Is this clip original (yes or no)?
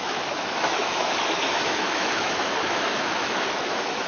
no